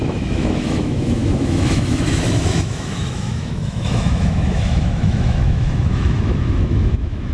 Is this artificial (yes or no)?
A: yes